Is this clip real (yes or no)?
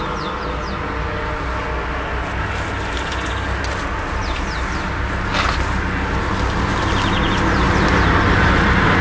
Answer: yes